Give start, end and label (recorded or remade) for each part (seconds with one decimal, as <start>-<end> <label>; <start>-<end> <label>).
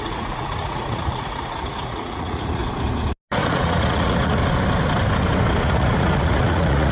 0.0-2.6 remade; 2.6-3.4 recorded; 3.4-4.4 remade; 4.4-5.6 recorded; 5.6-6.9 remade